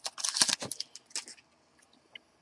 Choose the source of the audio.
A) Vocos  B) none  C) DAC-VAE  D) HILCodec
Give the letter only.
B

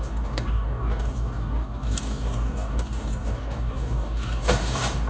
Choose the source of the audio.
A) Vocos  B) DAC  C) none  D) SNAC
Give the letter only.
B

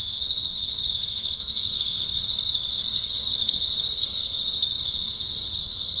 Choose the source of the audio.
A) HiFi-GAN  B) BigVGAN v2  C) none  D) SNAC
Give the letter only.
D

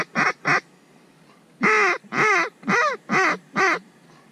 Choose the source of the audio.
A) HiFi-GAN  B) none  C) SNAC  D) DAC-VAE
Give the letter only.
B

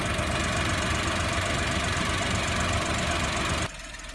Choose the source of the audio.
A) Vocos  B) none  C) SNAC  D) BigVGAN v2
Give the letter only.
B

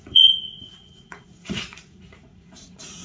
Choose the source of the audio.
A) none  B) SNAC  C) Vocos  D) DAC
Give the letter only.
C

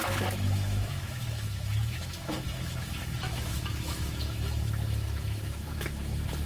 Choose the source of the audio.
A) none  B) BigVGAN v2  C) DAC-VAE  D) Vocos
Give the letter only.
C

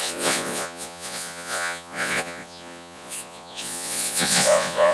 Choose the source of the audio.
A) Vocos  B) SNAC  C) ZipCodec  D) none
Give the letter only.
A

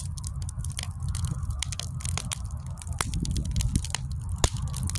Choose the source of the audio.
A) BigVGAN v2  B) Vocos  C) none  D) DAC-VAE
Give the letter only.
C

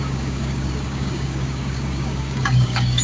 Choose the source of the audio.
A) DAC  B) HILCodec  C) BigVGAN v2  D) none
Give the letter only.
A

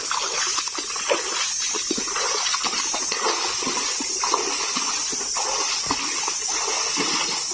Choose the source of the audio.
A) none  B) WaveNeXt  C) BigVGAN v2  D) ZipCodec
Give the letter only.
A